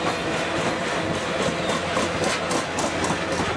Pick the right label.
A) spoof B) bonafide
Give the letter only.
B